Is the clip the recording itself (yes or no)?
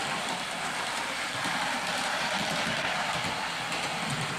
no